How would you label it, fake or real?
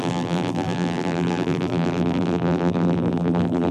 fake